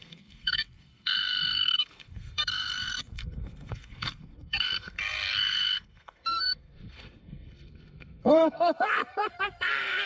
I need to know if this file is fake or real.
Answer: fake